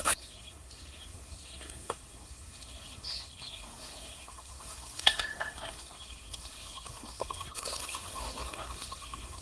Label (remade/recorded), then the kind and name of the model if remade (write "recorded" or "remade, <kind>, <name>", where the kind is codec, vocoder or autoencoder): remade, codec, SNAC